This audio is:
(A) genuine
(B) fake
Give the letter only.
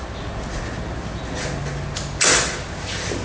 A